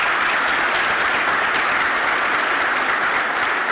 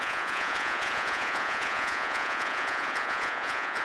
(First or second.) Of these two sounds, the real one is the first